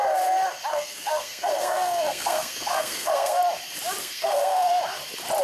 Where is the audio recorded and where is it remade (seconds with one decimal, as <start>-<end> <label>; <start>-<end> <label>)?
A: 0.0-0.7 recorded; 0.7-3.4 remade; 3.4-4.0 recorded; 4.0-4.8 remade; 4.8-5.4 recorded